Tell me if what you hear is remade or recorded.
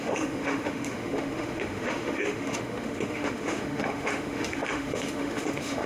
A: remade